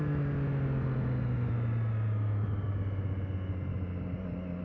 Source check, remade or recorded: recorded